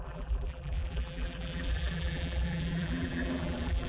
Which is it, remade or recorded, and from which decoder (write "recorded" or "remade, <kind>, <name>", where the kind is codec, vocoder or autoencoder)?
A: remade, vocoder, BigVGAN v2